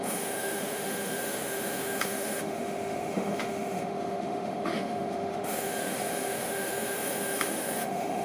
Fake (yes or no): yes